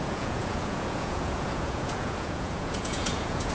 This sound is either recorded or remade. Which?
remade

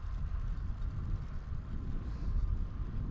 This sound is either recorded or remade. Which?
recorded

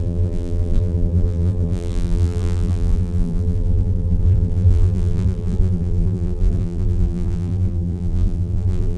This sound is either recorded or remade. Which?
remade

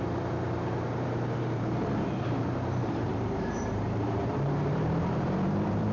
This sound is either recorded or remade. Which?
remade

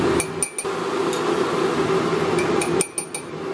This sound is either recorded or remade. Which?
recorded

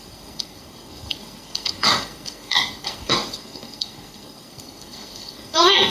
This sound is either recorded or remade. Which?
remade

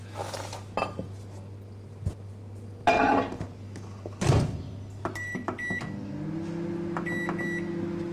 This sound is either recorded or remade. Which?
recorded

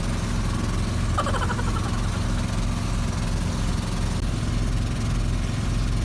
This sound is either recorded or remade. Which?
recorded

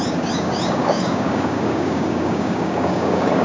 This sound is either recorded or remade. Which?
remade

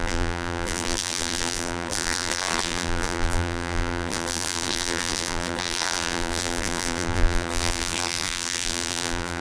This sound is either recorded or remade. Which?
remade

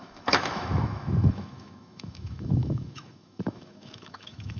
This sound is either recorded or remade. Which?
remade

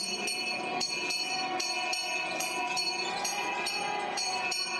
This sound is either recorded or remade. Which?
remade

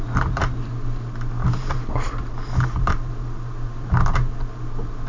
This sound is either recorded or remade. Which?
recorded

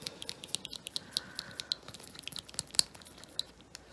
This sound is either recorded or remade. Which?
recorded